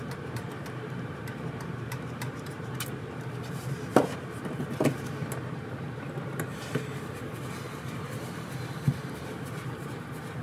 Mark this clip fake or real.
fake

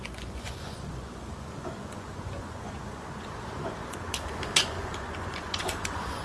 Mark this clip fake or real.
fake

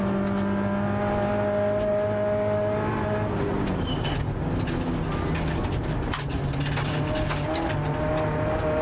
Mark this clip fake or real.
real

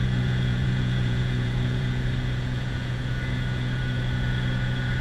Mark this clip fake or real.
fake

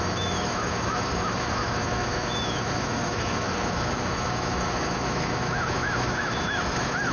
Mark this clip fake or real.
fake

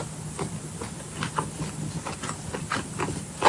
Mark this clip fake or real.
real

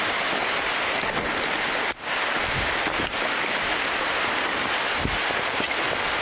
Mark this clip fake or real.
real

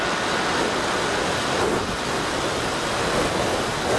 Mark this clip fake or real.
real